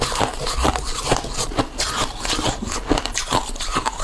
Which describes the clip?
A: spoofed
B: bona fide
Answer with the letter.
B